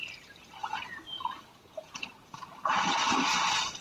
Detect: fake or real real